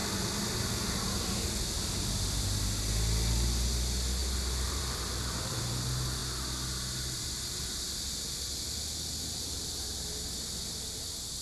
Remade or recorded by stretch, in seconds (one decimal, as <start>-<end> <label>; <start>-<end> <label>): 0.0-4.2 recorded; 4.2-5.7 remade; 5.7-11.4 recorded